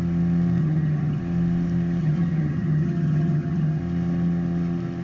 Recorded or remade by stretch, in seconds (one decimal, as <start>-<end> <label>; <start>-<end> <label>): 0.0-0.6 recorded; 0.6-1.2 remade; 1.2-2.0 recorded; 2.0-3.8 remade; 3.8-5.0 recorded